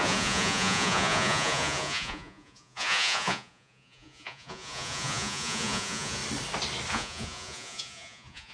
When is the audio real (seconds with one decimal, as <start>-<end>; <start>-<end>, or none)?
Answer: 6.2-6.9